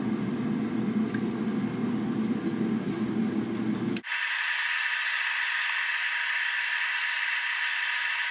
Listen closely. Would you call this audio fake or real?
real